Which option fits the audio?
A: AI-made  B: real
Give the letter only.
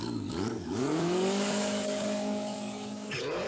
A